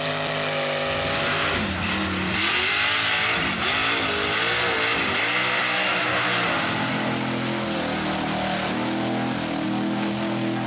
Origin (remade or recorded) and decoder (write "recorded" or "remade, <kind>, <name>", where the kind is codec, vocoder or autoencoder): recorded